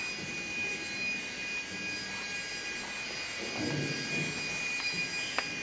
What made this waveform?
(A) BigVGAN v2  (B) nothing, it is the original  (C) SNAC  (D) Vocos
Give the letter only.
B